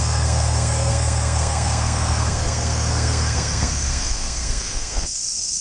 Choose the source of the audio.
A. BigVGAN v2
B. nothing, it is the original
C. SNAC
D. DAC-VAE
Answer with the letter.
C